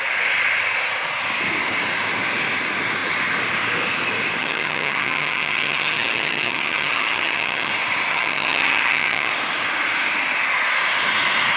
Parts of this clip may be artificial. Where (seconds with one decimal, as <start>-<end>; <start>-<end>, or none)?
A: 4.4-7.7; 8.1-9.3